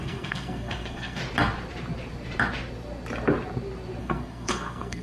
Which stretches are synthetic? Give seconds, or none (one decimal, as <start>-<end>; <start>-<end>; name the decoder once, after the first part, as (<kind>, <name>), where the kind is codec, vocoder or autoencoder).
0.0-1.2 (codec, SNAC); 4.0-5.0